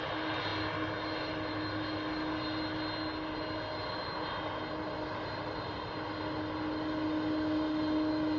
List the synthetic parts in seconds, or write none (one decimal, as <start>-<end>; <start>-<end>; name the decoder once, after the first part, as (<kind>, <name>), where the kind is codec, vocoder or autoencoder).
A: none